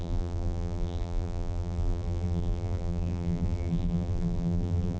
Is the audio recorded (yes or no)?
no